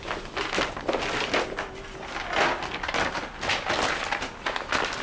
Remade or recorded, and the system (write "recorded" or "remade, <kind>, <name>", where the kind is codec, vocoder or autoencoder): recorded